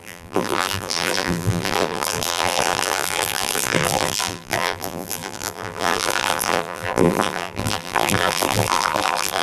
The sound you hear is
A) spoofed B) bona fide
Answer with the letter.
A